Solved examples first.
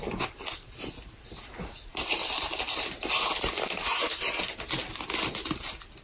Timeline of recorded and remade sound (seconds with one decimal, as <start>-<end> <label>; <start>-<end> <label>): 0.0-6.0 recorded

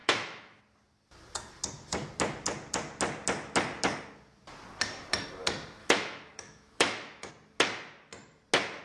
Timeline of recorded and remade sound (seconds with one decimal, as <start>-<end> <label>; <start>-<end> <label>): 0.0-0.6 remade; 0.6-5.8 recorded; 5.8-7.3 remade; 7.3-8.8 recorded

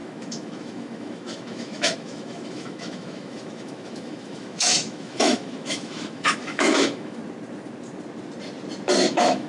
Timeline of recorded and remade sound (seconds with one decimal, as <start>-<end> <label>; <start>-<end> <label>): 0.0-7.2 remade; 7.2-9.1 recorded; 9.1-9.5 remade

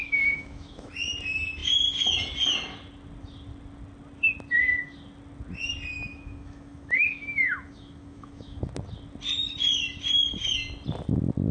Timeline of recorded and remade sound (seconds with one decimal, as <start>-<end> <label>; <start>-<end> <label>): 0.0-0.9 remade; 0.9-5.9 recorded; 5.9-8.6 remade; 8.6-11.5 recorded